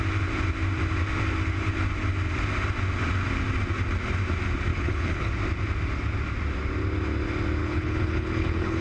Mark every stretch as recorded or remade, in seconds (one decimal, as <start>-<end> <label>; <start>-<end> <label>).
0.0-4.7 recorded; 4.7-5.3 remade; 5.3-7.6 recorded; 7.6-8.8 remade